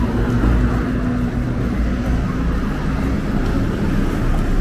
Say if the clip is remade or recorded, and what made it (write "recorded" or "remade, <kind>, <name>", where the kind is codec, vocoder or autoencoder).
recorded